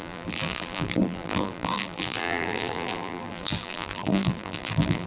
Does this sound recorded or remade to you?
remade